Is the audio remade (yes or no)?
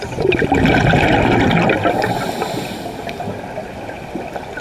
no